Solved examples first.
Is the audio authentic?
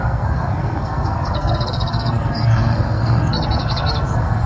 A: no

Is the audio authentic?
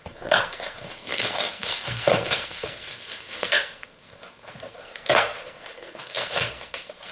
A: no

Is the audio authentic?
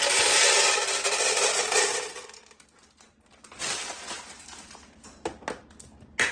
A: yes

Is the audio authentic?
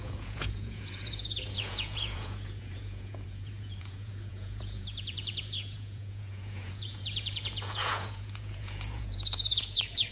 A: no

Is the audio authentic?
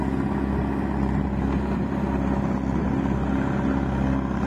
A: yes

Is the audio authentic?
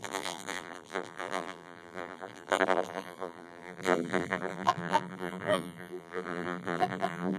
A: no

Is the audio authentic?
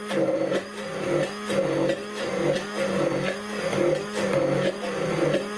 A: yes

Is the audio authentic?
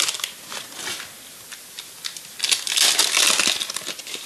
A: yes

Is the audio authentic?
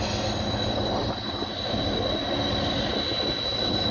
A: yes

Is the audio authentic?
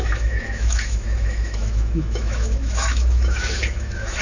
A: no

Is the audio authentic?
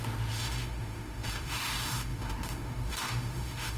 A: no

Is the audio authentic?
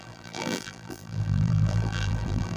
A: no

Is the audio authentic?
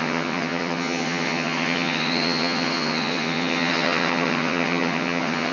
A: no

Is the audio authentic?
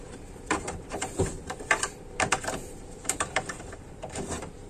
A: no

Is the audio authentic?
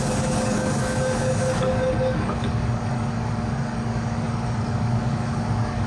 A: no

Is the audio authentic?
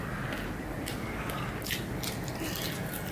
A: yes